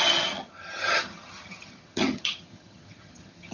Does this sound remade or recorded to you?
remade